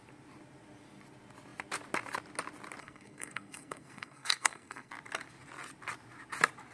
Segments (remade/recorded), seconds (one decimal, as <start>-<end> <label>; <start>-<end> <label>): 0.0-2.8 recorded; 2.8-4.9 remade; 4.9-6.7 recorded